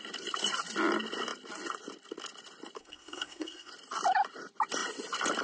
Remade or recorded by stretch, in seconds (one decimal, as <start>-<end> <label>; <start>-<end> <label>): 0.0-2.8 recorded; 2.8-3.7 remade; 3.7-5.4 recorded